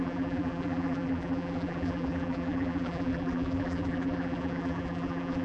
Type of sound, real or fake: fake